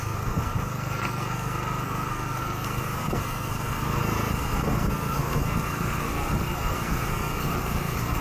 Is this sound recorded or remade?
remade